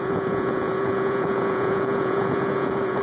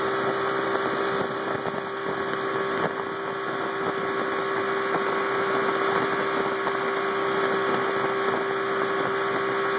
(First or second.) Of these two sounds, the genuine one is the second